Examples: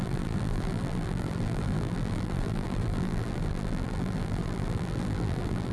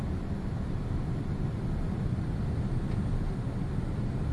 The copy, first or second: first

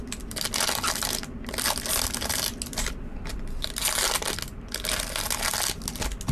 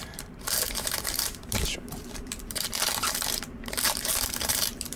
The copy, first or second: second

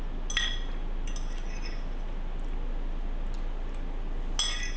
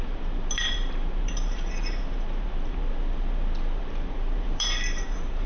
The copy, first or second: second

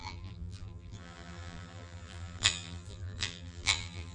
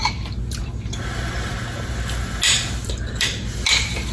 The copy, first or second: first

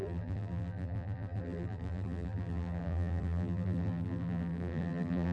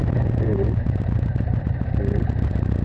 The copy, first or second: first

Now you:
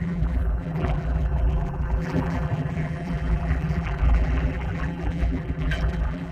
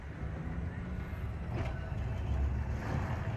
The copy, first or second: first